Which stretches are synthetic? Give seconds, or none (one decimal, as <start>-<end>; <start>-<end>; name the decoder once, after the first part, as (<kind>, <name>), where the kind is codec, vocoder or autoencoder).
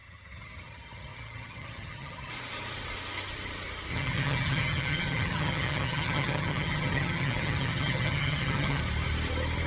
0.0-2.3 (vocoder, HiFi-GAN); 3.9-8.8